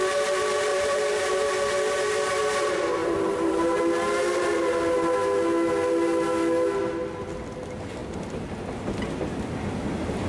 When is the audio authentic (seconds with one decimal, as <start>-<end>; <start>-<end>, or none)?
0.0-0.7; 2.4-3.0; 3.8-10.3